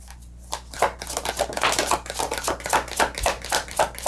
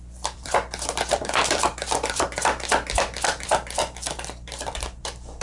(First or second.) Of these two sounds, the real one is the first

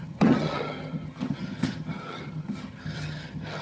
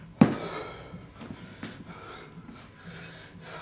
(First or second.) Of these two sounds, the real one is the second